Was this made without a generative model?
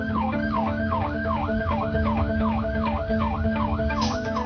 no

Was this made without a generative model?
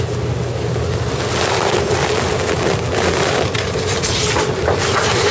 yes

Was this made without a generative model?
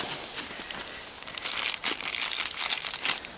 yes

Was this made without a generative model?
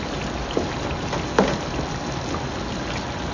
yes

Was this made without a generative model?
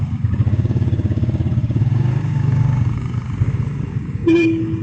no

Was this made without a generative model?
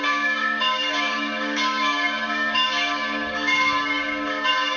no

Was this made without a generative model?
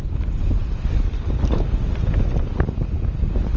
yes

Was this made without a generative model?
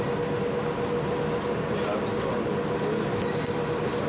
yes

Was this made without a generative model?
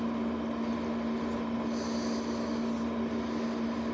yes